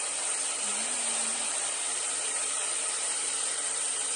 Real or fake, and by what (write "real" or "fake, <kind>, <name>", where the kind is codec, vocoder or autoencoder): fake, vocoder, BigVGAN v2